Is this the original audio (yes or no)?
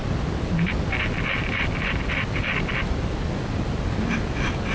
yes